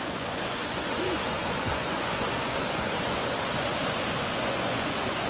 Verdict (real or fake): fake